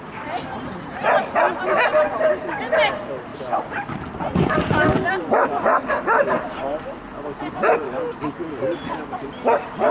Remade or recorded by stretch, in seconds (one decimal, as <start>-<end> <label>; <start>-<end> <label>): 0.0-9.9 recorded